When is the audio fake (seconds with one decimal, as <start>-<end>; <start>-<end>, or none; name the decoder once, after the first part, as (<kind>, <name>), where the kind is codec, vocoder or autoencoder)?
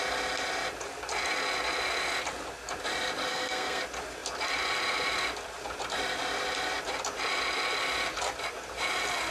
3.3-3.8 (codec, SNAC)